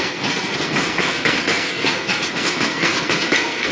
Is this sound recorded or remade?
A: remade